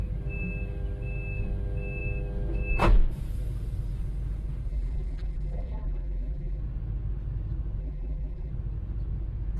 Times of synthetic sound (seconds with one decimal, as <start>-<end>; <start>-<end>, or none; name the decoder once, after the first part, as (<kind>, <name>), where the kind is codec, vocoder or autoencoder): 4.7-6.6 (vocoder, BigVGAN v2); 7.8-8.5